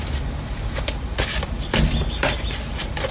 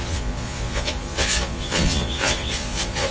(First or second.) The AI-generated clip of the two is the second